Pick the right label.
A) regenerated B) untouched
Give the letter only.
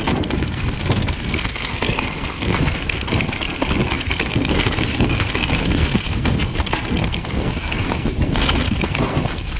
A